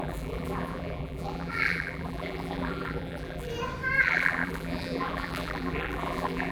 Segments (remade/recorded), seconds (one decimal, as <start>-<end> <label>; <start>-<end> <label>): 0.0-3.5 remade; 3.5-4.0 recorded; 4.0-6.5 remade